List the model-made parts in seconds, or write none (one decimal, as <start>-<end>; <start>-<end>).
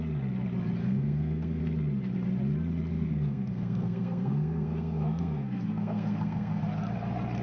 0.8-1.6; 2.9-6.6